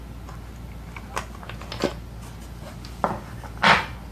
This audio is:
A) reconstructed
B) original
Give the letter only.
B